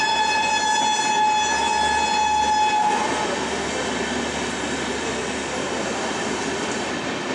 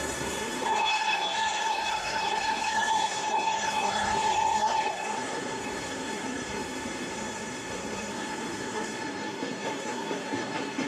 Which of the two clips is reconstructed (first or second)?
second